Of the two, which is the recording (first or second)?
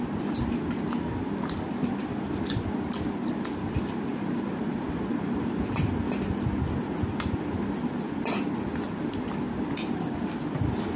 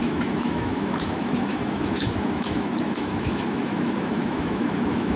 first